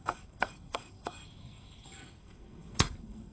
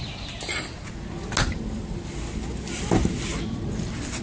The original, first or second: second